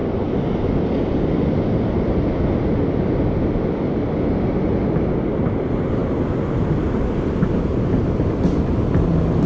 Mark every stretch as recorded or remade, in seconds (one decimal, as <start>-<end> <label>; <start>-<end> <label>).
0.0-9.5 recorded